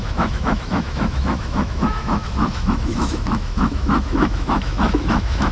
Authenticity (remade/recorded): remade